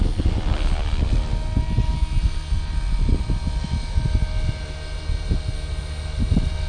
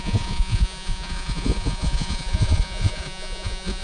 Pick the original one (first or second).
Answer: first